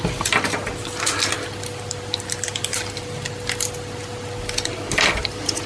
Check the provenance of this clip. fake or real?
fake